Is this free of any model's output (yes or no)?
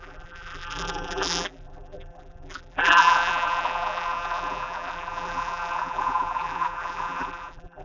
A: no